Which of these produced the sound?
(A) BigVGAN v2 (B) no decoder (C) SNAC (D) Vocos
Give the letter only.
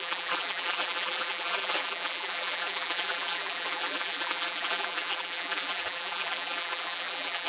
A